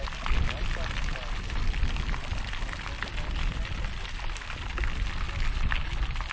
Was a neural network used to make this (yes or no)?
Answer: no